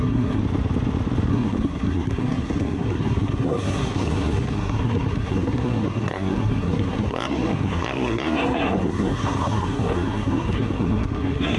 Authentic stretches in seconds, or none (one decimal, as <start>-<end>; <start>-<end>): 0.4-1.3